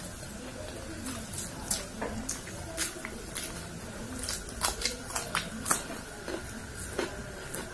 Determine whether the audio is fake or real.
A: real